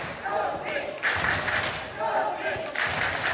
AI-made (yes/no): no